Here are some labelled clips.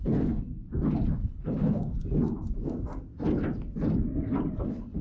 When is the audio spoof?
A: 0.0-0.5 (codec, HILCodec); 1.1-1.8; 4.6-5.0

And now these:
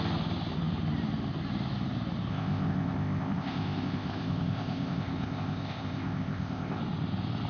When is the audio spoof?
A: 2.3-6.8 (codec, ZipCodec)